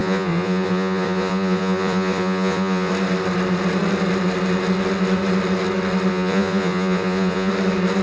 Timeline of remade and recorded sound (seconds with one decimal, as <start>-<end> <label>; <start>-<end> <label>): 0.0-2.9 remade; 2.9-6.1 recorded; 6.1-7.5 remade; 7.5-8.0 recorded